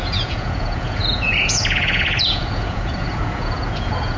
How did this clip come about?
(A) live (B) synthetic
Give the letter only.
B